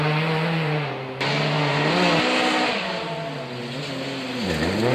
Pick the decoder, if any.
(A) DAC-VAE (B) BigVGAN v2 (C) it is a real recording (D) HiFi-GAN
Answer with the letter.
C